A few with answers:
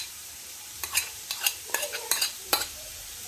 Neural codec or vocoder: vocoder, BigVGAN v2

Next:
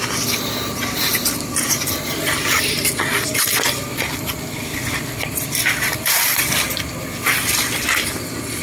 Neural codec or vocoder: vocoder, BigVGAN v2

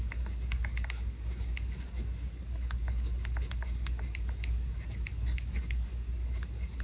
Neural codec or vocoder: codec, DAC